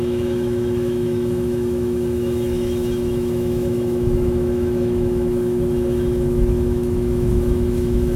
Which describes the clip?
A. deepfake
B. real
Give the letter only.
A